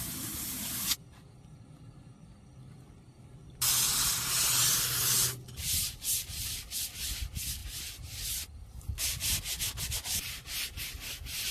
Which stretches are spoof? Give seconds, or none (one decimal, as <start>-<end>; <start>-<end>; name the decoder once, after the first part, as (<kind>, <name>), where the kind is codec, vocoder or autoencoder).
none